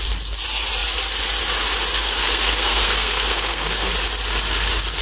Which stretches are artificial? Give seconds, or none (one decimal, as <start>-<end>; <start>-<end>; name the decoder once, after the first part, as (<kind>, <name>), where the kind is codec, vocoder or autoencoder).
1.9-3.9 (codec, SNAC)